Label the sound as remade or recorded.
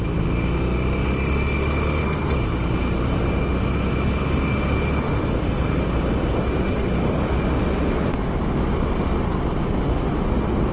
recorded